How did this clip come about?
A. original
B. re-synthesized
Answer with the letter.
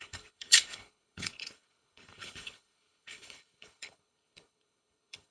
B